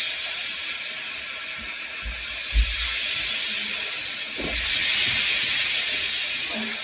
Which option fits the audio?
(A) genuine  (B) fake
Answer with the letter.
A